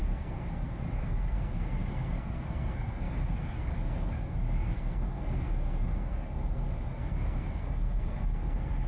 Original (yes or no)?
no